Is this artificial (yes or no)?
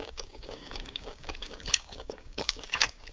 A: yes